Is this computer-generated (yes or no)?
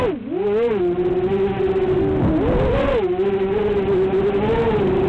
no